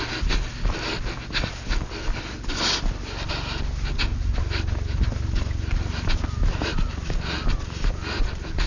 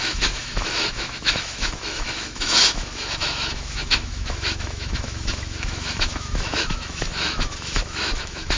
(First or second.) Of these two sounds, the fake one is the second